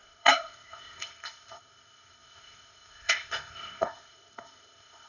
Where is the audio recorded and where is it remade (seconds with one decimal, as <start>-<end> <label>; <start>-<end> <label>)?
0.0-5.1 remade